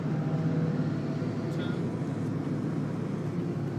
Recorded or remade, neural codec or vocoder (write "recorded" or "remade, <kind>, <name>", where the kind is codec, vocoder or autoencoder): recorded